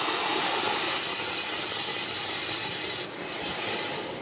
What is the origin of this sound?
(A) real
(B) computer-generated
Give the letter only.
A